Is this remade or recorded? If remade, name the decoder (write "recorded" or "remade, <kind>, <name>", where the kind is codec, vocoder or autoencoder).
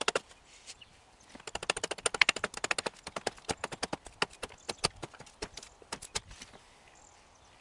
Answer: recorded